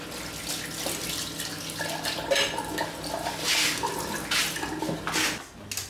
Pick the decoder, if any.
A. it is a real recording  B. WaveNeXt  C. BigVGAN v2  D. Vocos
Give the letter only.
A